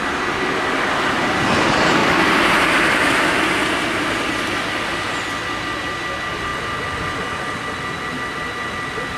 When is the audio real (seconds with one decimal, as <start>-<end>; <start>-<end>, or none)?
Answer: 0.0-2.0; 5.2-9.2